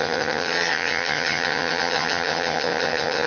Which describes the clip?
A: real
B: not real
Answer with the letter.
B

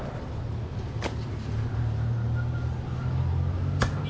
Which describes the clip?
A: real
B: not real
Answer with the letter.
A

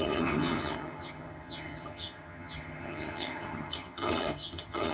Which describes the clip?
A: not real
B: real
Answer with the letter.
A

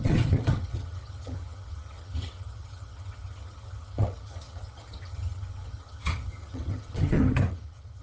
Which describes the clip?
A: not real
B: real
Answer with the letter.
A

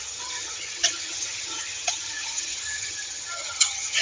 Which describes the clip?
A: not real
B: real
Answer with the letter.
A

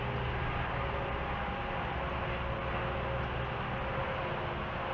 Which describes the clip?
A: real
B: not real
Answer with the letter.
A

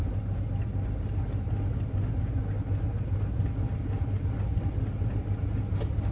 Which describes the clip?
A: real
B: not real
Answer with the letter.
A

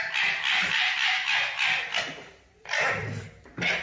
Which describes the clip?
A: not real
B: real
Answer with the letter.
B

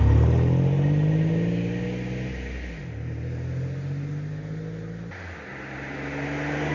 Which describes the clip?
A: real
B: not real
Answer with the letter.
A